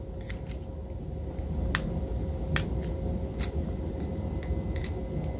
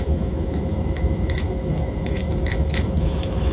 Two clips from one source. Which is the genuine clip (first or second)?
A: first